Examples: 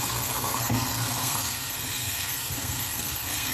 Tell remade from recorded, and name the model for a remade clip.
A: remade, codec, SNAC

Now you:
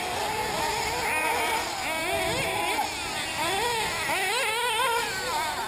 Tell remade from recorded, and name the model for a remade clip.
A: recorded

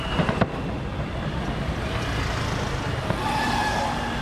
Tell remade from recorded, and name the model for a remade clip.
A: recorded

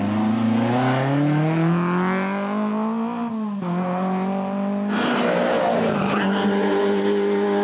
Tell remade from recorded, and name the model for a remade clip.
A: recorded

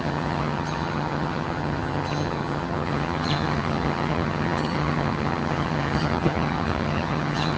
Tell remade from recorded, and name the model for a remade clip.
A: remade, vocoder, HiFi-GAN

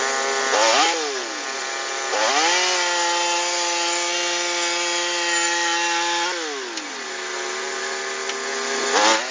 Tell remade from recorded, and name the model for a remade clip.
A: recorded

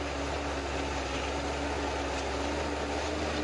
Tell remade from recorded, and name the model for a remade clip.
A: recorded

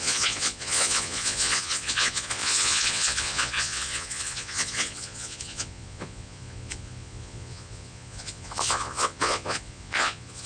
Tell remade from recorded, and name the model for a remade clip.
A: remade, vocoder, Vocos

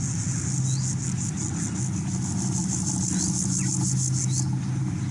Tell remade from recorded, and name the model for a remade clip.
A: recorded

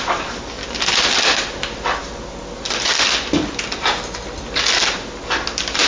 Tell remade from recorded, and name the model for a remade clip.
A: recorded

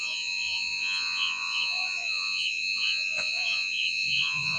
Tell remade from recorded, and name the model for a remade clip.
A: remade, vocoder, Vocos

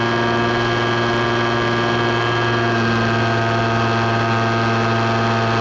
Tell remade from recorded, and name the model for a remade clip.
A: recorded